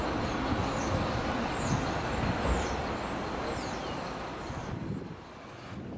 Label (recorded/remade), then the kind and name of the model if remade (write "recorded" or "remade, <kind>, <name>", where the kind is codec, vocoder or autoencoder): recorded